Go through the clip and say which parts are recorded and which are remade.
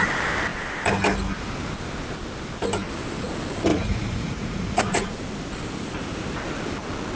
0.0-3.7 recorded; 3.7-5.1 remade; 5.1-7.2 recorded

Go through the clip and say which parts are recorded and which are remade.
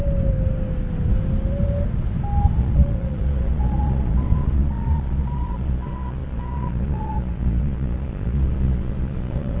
0.0-2.6 recorded; 2.6-9.6 remade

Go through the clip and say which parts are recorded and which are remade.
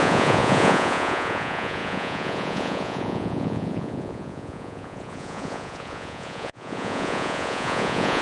0.0-8.2 remade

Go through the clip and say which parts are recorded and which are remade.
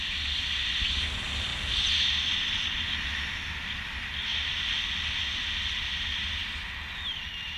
0.0-7.6 recorded